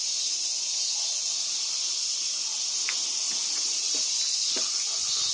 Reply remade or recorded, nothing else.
recorded